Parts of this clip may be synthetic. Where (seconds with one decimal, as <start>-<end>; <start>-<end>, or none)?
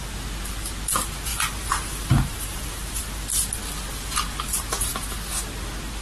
1.3-2.6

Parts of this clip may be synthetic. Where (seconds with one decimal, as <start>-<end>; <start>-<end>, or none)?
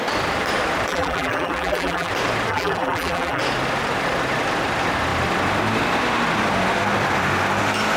0.9-2.1; 2.5-3.4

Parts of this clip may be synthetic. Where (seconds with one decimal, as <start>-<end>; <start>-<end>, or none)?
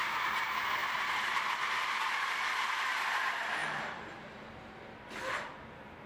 3.6-6.1